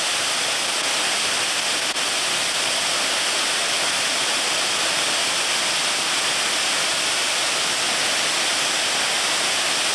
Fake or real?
real